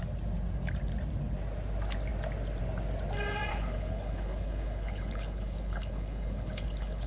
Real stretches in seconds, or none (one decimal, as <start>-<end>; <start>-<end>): 0.0-3.5